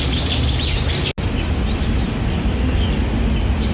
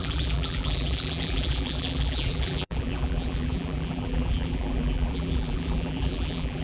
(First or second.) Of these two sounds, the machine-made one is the second